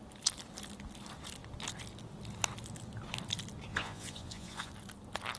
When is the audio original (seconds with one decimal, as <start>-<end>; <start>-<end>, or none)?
0.0-3.7; 4.7-5.4